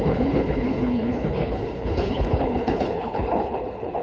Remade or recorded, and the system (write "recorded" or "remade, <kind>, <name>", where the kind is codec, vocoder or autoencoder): remade, codec, HILCodec